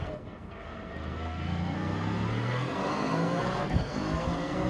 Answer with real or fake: fake